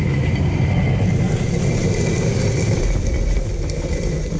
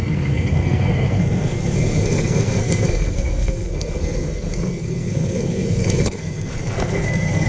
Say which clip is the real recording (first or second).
first